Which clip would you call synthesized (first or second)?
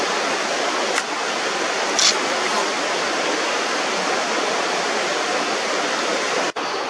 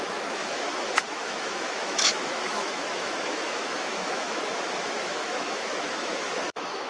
second